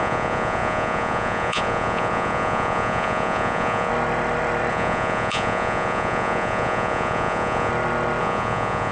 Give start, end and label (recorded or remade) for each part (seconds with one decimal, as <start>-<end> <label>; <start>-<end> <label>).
0.0-3.9 remade; 3.9-4.7 recorded; 4.7-7.7 remade; 7.7-8.2 recorded; 8.2-8.9 remade